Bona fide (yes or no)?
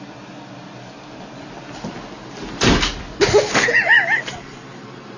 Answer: yes